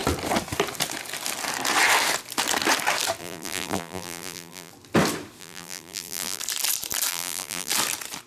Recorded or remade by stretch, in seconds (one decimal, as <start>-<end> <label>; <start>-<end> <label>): 0.0-3.2 recorded; 3.2-4.7 remade; 4.7-5.4 recorded; 5.4-6.4 remade; 6.4-7.1 recorded; 7.1-7.7 remade; 7.7-8.3 recorded